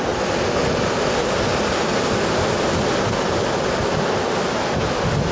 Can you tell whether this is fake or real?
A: real